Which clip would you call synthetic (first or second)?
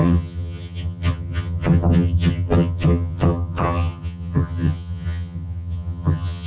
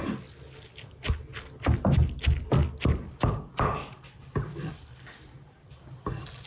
first